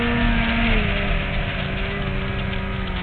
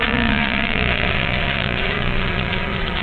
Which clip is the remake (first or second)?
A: second